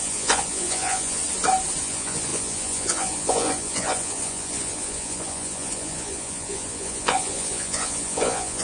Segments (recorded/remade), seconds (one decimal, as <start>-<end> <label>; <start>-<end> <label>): 0.0-1.2 remade; 1.2-1.8 recorded; 1.8-8.6 remade